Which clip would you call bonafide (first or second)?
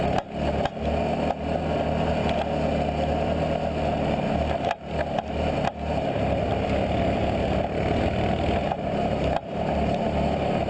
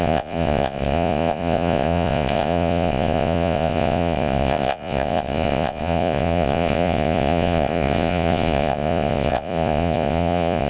first